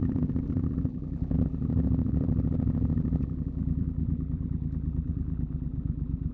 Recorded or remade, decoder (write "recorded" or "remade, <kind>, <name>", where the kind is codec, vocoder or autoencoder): remade, vocoder, BigVGAN v2